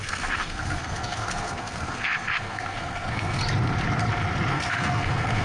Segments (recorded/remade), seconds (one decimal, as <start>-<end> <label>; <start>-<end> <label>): 0.0-3.4 remade; 3.4-4.5 recorded; 4.5-5.4 remade